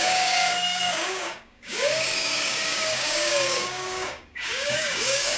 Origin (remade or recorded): remade